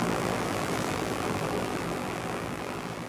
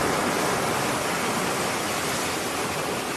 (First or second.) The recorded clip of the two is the second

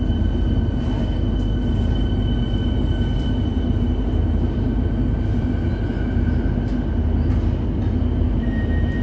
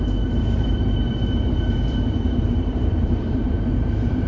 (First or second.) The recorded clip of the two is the first